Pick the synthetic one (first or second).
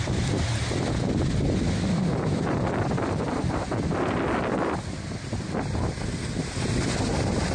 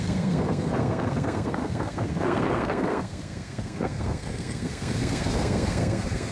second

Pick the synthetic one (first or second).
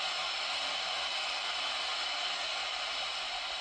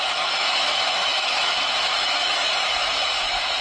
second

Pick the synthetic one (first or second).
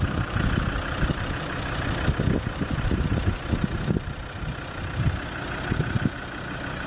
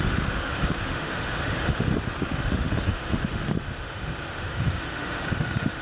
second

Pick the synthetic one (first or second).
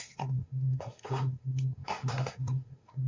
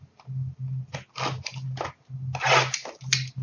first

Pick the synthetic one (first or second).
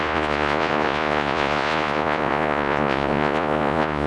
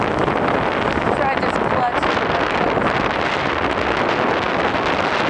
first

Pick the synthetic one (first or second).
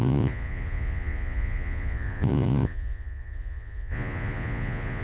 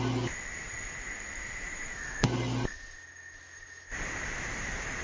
first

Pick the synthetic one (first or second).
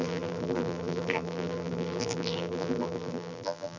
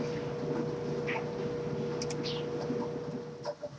first